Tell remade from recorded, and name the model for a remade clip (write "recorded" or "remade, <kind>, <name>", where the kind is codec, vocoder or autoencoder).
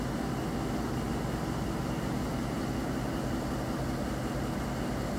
recorded